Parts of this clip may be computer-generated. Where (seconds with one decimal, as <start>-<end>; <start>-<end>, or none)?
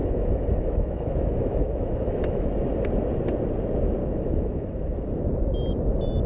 0.0-2.5; 4.0-4.9